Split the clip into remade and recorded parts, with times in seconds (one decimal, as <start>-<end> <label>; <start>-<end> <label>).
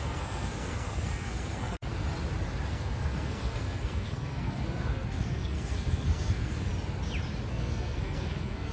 0.0-1.9 remade; 1.9-2.7 recorded; 2.7-6.7 remade; 6.7-7.5 recorded; 7.5-8.7 remade